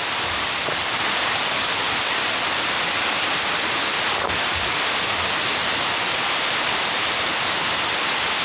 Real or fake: real